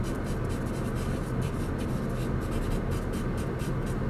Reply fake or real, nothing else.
real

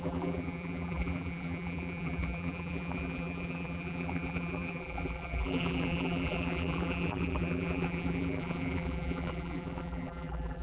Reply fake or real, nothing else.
fake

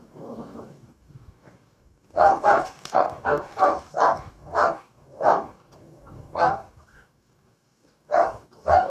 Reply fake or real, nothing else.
fake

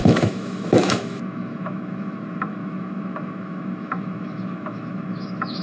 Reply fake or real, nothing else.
fake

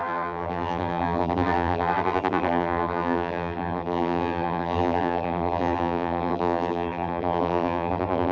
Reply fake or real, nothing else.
fake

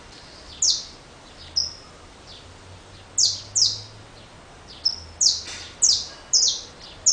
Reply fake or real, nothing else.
real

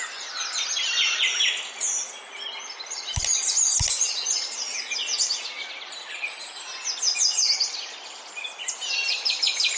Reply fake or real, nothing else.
real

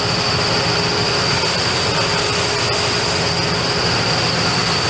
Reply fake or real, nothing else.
real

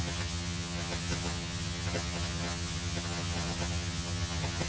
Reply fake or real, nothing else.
fake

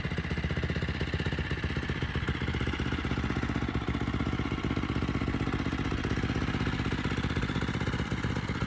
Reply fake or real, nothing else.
real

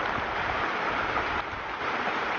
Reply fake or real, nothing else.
real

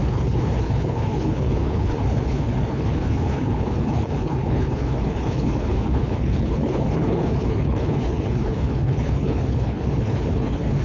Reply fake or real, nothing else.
fake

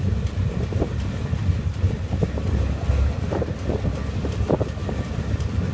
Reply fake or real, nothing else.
real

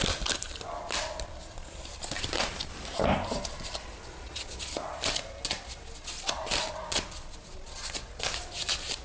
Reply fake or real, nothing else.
real